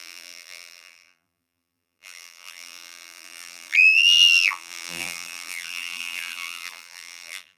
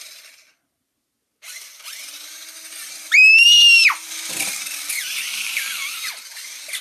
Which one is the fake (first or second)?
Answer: first